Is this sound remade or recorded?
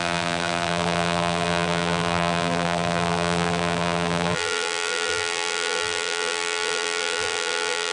remade